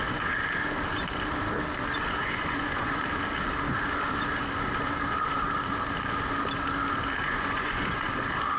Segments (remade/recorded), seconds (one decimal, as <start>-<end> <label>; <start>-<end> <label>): 0.0-2.2 recorded; 2.2-3.0 remade; 3.0-7.2 recorded; 7.2-8.1 remade; 8.1-8.6 recorded